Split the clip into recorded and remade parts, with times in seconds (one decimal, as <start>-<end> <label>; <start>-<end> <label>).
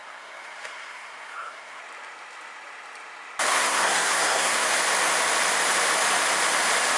0.0-1.8 remade; 1.8-3.5 recorded; 3.5-4.7 remade; 4.7-7.0 recorded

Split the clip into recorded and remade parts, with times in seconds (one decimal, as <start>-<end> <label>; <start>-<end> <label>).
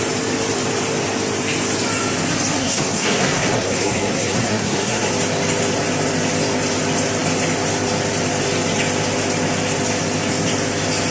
0.0-2.6 recorded; 2.6-5.1 remade; 5.1-11.1 recorded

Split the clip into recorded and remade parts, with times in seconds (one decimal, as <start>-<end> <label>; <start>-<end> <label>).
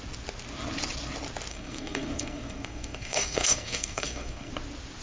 0.0-1.5 recorded; 1.5-4.5 remade; 4.5-5.0 recorded